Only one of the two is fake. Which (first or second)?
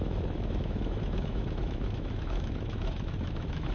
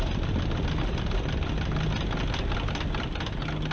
first